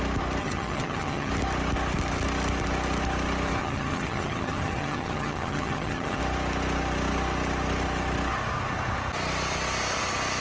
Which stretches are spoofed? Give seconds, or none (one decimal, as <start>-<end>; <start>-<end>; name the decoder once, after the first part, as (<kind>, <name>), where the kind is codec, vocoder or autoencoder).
0.4-1.3 (vocoder, HiFi-GAN); 3.6-6.2

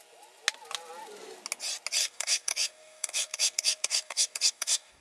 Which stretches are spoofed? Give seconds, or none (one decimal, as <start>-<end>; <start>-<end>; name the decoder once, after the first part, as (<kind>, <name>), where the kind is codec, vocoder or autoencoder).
2.0-5.0 (codec, DAC)

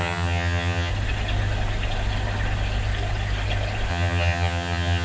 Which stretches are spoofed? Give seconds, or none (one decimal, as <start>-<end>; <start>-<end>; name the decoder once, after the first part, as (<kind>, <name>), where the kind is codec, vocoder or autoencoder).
0.0-0.9 (vocoder, HiFi-GAN); 3.9-5.0

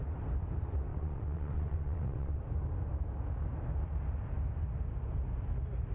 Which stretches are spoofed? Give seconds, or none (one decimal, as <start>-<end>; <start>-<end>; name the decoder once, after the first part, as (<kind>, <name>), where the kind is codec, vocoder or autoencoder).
0.9-2.4 (vocoder, WaveNeXt)

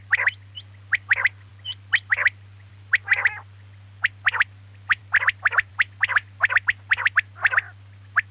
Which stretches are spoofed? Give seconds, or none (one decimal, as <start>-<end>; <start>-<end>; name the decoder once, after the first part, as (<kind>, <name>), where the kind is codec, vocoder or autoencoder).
none

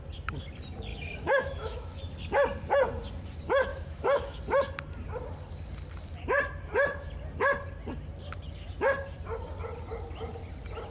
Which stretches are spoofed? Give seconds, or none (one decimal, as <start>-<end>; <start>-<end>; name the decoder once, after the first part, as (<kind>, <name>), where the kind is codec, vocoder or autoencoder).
0.9-2.0 (autoencoder, DAC-VAE); 3.7-4.4

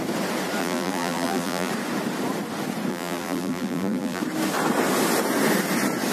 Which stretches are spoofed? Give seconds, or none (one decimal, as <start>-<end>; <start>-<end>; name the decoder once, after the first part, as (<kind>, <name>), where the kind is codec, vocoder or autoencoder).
0.6-1.7 (vocoder, BigVGAN v2); 2.9-4.2

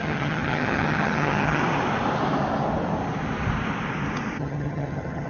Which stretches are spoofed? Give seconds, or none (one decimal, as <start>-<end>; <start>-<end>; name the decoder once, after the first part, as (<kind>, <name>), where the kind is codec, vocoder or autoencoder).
0.0-1.6 (vocoder, HiFi-GAN); 4.4-5.3